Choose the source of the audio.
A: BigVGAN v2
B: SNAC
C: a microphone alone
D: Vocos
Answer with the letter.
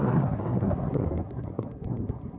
B